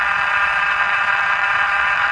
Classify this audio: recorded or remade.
remade